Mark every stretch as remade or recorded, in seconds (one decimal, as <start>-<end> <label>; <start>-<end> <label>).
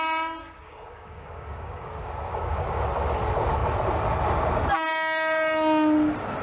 0.0-0.4 recorded; 0.4-2.8 remade; 2.8-6.4 recorded